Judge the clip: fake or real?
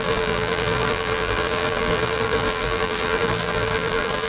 fake